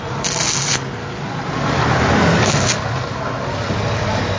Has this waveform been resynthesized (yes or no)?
no